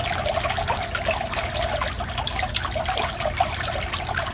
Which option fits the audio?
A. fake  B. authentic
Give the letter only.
B